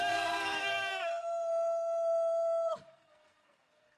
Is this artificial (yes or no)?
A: yes